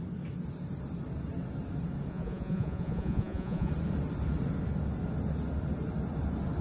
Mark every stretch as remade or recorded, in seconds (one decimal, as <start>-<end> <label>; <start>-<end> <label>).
0.0-2.1 recorded; 2.1-3.7 remade; 3.7-6.6 recorded